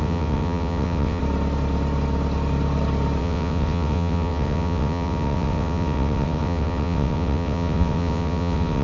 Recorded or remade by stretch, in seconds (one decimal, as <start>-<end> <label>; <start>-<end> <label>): 0.0-1.2 remade; 1.2-3.2 recorded; 3.2-8.8 remade

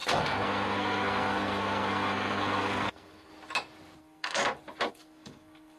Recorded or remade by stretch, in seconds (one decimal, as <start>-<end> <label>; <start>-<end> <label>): 0.0-3.3 remade; 3.3-4.0 recorded; 4.0-4.4 remade; 4.4-4.9 recorded; 4.9-5.8 remade

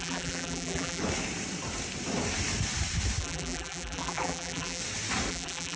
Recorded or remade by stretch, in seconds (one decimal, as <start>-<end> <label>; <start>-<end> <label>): 0.0-1.0 remade; 1.0-3.2 recorded; 3.2-4.8 remade; 4.8-5.3 recorded; 5.3-5.8 remade

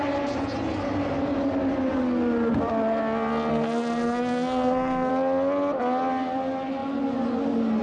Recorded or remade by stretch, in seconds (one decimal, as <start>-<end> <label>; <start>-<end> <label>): 0.0-3.5 recorded; 3.5-5.1 remade; 5.1-7.8 recorded

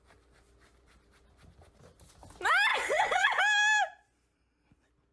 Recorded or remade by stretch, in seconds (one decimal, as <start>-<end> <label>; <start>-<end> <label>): 0.0-2.7 recorded; 2.7-3.4 remade; 3.4-5.1 recorded

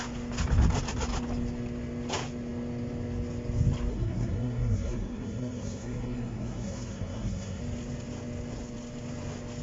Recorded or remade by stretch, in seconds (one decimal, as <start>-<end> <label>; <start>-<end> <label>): 0.0-3.9 recorded; 3.9-7.6 remade; 7.6-9.6 recorded

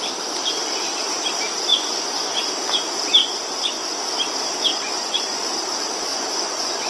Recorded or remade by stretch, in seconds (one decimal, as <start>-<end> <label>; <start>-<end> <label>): 0.0-1.7 recorded; 1.7-2.5 remade; 2.5-3.2 recorded; 3.2-4.0 remade; 4.0-4.7 recorded; 4.7-5.4 remade; 5.4-6.1 recorded; 6.1-6.9 remade